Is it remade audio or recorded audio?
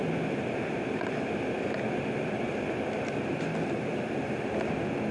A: recorded